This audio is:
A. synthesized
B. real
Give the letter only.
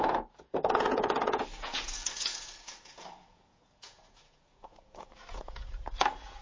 A